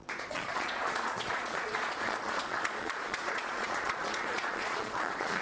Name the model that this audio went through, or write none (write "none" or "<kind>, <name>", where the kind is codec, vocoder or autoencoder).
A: vocoder, Vocos